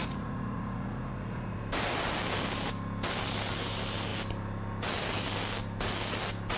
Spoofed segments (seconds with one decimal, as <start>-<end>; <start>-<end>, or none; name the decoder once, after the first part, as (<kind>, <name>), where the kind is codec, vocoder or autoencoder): 0.0-1.6 (vocoder, Vocos)